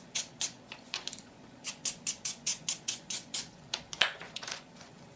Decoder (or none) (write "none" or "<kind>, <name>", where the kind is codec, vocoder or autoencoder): vocoder, Vocos